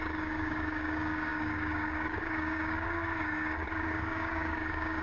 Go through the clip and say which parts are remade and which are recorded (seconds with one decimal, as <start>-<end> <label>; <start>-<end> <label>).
0.0-5.0 remade